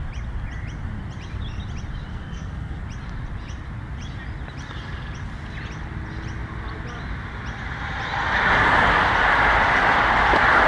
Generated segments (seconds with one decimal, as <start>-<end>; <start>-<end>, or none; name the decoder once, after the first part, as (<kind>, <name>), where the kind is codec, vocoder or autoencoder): 2.1-2.8 (codec, SNAC)